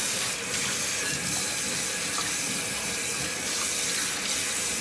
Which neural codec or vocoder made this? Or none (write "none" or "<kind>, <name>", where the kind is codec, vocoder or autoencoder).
none